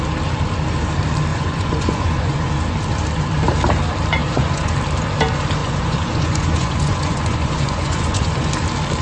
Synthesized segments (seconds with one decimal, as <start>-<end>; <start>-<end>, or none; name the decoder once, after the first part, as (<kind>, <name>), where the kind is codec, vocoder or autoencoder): 1.3-2.5 (vocoder, Vocos); 4.2-4.7; 5.6-8.5